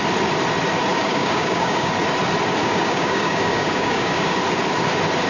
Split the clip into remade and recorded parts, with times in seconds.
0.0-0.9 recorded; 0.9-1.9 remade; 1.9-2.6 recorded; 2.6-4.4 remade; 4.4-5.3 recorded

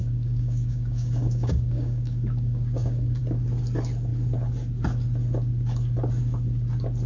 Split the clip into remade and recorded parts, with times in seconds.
0.0-3.2 remade; 3.2-7.1 recorded